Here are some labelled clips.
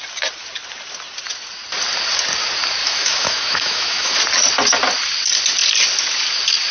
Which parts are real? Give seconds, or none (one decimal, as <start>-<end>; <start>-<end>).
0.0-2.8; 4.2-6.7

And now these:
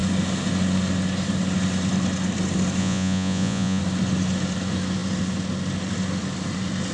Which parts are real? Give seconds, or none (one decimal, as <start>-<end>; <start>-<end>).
0.0-2.8; 3.8-6.9

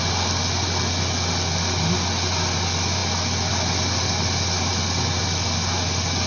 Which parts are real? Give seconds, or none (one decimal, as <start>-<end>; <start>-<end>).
0.0-6.3

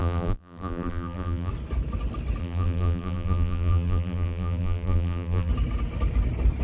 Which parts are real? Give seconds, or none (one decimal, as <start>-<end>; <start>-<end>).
1.5-2.4; 5.5-6.6